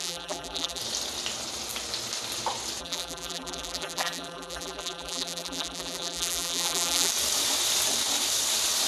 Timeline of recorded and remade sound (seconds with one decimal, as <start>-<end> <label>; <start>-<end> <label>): 0.0-0.8 remade; 0.8-2.8 recorded; 2.8-7.1 remade; 7.1-8.9 recorded